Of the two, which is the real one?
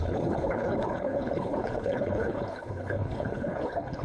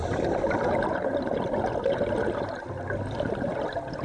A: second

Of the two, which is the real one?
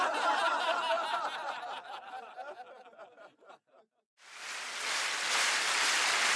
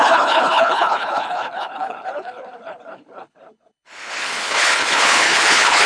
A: first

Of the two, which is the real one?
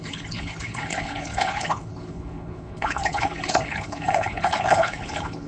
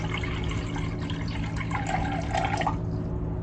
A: second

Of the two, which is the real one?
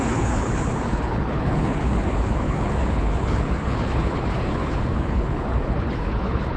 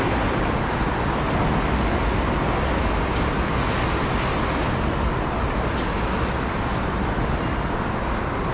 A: second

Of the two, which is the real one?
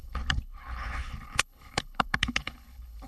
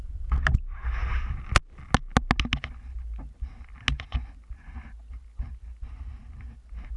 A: second